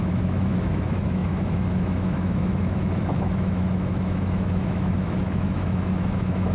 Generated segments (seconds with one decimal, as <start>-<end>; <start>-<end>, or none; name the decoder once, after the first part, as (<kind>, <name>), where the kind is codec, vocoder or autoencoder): 0.0-6.5 (autoencoder, DAC-VAE)